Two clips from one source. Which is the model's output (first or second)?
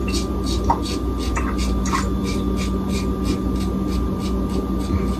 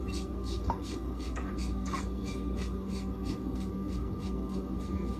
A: second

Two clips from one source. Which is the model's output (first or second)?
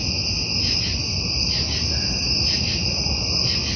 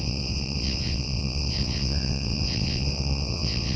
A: second